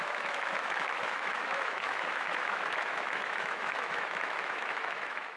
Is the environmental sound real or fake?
fake